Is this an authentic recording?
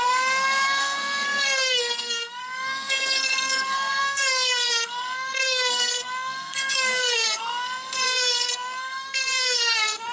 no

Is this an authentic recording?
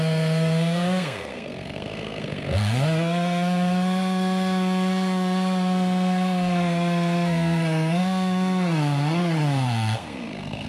no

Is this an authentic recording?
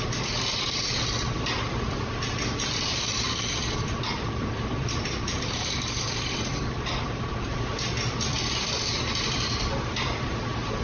yes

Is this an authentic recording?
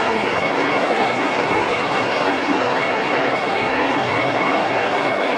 no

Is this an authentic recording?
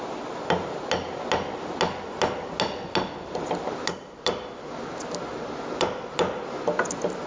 yes